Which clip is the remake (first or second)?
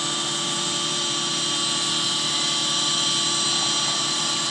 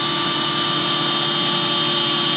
first